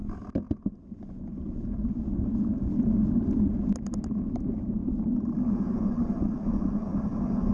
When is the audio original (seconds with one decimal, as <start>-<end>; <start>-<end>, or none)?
0.0-7.5